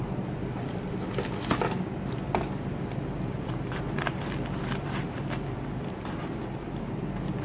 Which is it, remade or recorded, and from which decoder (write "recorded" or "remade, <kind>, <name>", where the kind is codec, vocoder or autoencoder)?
recorded